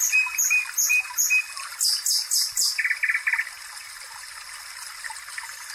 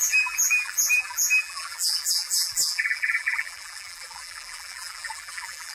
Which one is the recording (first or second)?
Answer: first